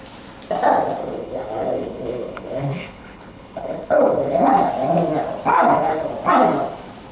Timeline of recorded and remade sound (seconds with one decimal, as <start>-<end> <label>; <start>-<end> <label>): 0.0-1.0 recorded; 1.0-4.7 remade; 4.7-5.5 recorded; 5.5-6.1 remade; 6.1-7.1 recorded